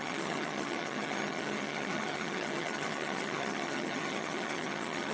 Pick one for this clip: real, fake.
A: fake